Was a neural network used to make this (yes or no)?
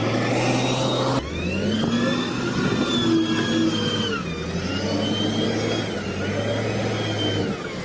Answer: no